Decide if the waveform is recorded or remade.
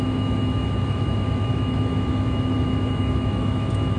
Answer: remade